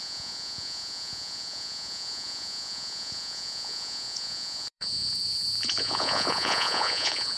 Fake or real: fake